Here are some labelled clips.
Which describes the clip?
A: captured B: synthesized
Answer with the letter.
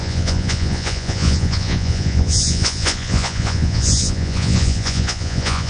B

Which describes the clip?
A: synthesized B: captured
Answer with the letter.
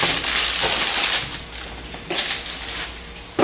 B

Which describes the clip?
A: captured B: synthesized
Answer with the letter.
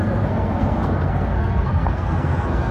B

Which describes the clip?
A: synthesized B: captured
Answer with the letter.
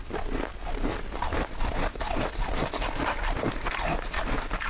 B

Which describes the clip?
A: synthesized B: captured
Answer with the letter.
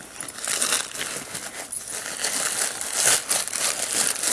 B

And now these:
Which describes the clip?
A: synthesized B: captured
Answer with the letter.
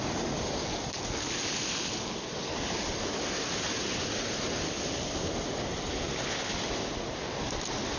B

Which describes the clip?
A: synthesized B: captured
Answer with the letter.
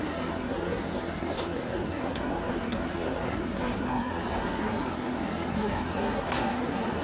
A